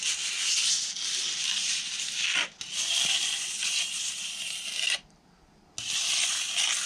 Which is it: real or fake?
real